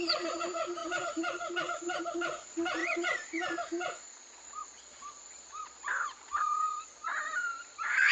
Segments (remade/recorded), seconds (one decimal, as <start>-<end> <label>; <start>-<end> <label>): 0.0-8.1 remade